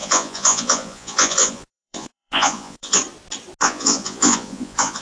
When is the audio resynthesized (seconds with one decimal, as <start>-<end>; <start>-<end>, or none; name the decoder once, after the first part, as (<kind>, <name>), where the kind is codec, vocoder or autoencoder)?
0.0-3.0 (vocoder, Vocos); 3.6-5.0